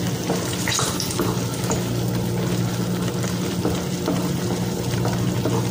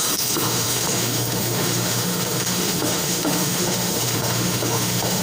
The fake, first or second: second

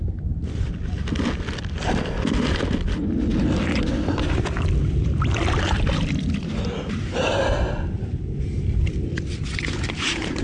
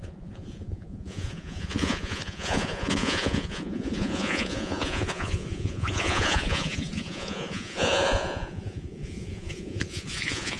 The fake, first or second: second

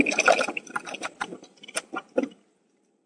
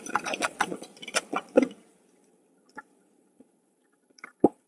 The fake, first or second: second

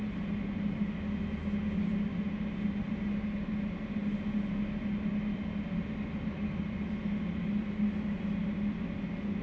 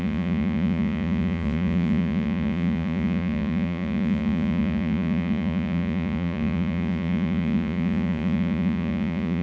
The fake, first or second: second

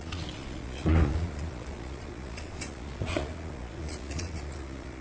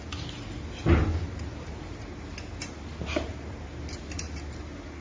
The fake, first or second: first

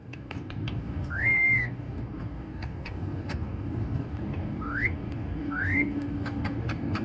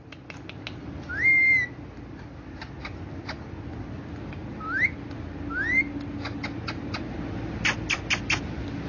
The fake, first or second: first